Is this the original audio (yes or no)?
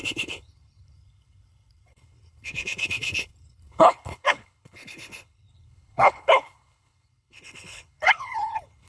no